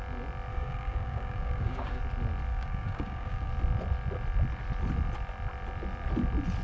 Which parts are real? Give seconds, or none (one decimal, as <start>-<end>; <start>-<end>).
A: 0.0-0.5; 2.0-2.5; 3.5-6.6